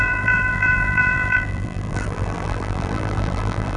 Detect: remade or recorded remade